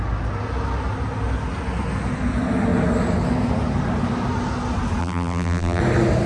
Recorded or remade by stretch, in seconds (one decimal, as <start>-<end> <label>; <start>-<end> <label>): 0.0-5.0 recorded; 5.0-5.8 remade; 5.8-6.3 recorded